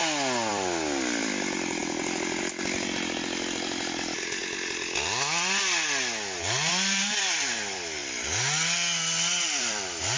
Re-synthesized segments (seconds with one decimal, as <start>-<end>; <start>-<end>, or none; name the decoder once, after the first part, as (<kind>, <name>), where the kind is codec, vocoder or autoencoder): 0.5-4.4 (vocoder, BigVGAN v2); 6.7-8.0; 9.6-10.2